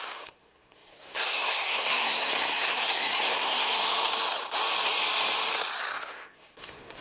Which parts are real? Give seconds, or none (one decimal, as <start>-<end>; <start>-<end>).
3.8-5.9